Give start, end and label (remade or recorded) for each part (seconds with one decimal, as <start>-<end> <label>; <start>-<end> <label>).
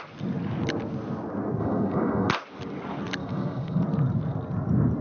0.0-1.6 recorded; 1.6-2.3 remade; 2.3-3.2 recorded; 3.2-3.8 remade; 3.8-5.0 recorded